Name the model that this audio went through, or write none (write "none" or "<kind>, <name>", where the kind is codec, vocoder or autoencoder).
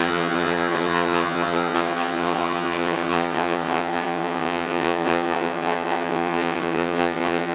vocoder, HiFi-GAN